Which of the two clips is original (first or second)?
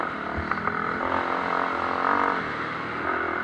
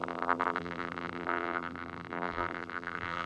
first